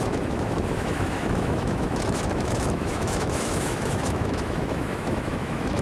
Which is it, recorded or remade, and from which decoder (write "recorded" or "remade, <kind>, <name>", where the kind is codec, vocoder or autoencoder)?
remade, autoencoder, DAC-VAE